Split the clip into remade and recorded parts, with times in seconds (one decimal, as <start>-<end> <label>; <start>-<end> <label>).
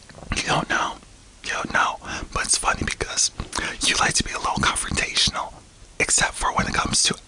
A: 0.0-7.3 recorded